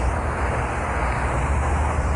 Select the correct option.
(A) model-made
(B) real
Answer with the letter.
B